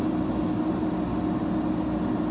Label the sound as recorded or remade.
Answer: recorded